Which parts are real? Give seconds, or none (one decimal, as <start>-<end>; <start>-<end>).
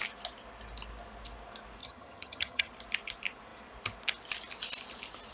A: 0.0-1.8; 2.7-5.3